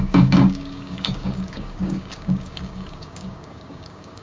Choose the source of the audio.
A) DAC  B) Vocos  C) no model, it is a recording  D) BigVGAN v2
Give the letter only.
A